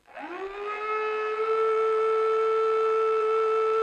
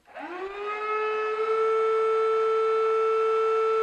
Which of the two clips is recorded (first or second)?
second